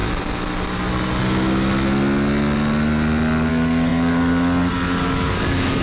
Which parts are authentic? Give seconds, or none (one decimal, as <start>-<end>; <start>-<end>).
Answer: 0.0-3.5